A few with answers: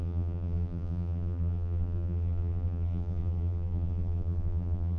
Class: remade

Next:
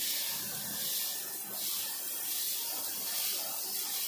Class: recorded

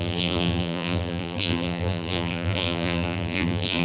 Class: remade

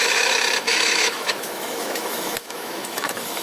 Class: remade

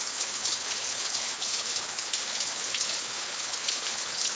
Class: remade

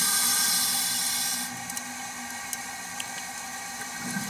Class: recorded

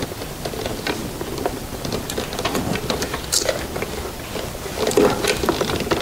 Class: recorded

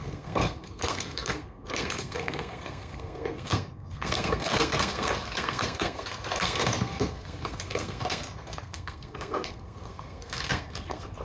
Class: remade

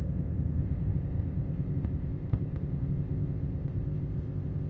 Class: remade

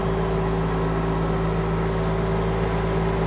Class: recorded